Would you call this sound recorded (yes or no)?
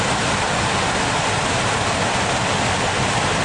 yes